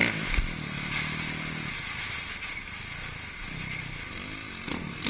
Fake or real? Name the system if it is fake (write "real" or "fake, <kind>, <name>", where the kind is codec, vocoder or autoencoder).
real